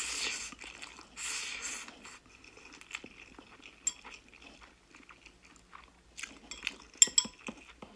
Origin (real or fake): real